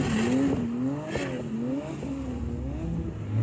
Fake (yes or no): no